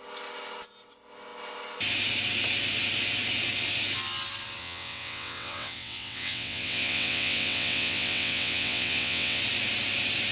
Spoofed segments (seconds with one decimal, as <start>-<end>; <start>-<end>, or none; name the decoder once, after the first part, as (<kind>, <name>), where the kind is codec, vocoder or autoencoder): 4.6-9.4 (vocoder, WaveNeXt)